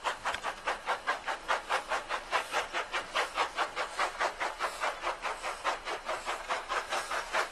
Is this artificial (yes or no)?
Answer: yes